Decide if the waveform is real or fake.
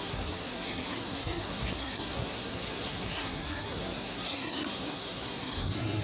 fake